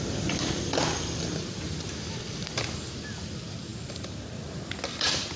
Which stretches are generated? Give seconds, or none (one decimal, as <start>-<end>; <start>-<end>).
0.0-3.7; 4.8-5.4